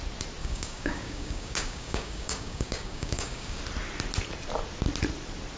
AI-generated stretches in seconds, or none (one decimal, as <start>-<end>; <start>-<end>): 0.4-3.6